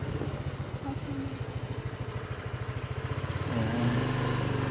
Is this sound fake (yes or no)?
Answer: no